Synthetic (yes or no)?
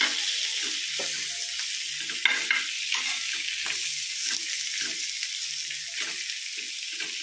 no